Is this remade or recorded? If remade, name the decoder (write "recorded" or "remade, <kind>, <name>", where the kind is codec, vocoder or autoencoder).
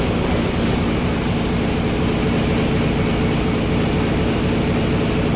recorded